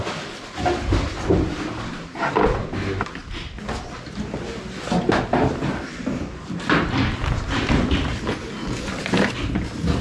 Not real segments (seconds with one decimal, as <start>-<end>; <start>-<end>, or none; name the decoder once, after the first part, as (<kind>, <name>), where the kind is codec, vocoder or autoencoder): none